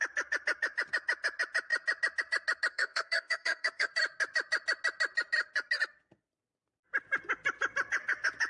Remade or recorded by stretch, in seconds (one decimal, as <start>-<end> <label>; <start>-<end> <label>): 0.0-2.7 recorded; 2.7-3.9 remade; 3.9-8.5 recorded